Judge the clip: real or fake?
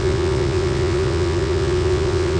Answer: fake